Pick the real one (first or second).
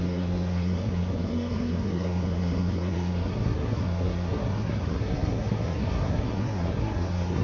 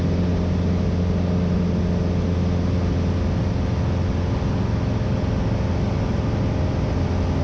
second